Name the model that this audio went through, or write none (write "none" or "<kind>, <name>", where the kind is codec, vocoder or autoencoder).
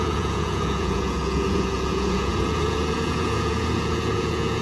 vocoder, Vocos